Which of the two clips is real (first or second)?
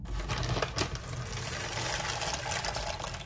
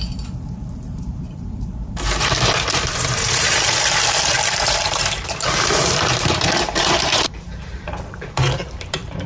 first